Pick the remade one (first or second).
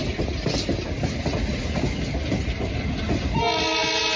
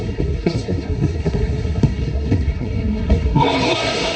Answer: second